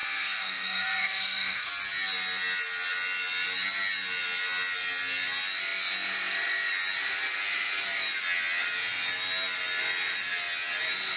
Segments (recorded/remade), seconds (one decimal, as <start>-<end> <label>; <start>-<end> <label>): 0.0-1.7 remade; 1.7-11.2 recorded